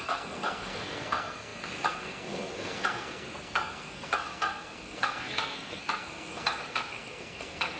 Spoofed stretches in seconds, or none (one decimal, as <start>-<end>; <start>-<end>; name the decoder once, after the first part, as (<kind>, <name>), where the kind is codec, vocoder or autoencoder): 0.0-7.8 (codec, SNAC)